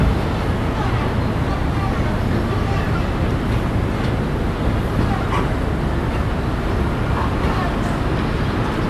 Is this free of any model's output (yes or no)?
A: yes